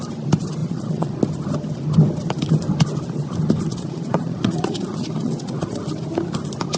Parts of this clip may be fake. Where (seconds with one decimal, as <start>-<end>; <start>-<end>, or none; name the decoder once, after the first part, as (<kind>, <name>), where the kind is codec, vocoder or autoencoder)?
0.6-1.2 (vocoder, Vocos); 3.7-5.8